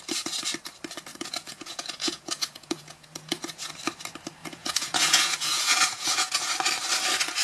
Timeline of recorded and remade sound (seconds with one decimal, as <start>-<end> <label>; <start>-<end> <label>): 0.0-1.1 recorded; 1.1-3.7 remade; 3.7-4.4 recorded; 4.4-6.5 remade; 6.5-7.4 recorded